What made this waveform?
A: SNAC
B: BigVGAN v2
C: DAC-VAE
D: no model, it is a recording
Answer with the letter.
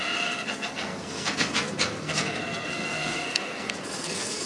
A